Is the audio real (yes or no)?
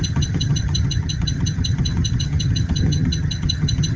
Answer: no